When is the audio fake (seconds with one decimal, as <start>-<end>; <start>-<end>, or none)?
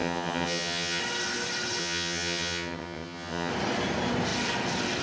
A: 0.0-1.0; 1.8-3.5